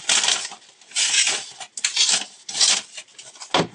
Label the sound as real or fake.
real